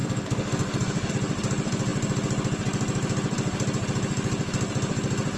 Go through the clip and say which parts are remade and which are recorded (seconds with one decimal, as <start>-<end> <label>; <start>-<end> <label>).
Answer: 0.0-1.1 remade; 1.1-5.4 recorded